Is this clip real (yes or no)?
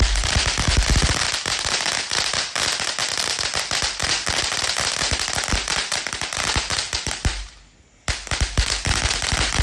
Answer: yes